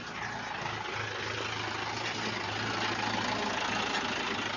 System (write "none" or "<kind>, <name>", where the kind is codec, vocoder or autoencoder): none